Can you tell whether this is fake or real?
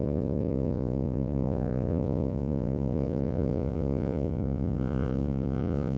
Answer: fake